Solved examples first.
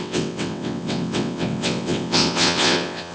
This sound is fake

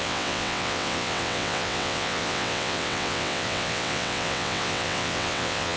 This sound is fake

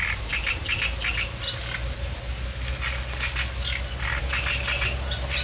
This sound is real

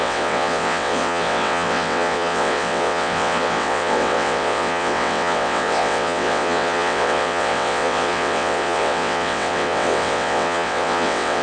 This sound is fake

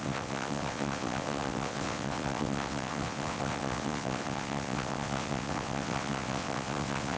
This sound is fake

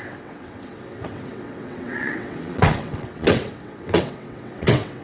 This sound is fake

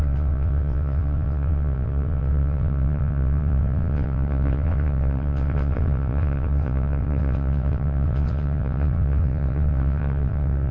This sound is fake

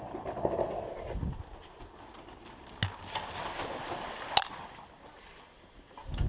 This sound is real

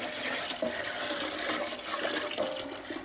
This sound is real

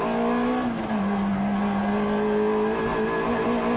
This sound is real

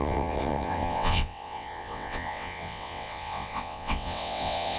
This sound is fake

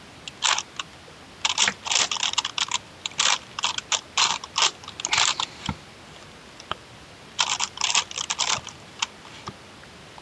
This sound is real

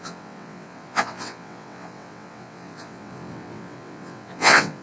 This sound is fake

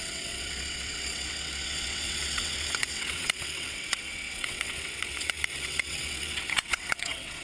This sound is fake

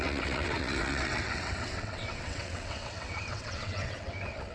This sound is fake